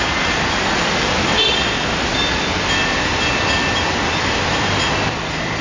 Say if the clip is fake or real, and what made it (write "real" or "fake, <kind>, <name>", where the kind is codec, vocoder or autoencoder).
fake, vocoder, BigVGAN v2